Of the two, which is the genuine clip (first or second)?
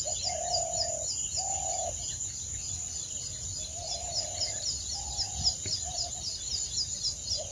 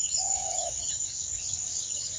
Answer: first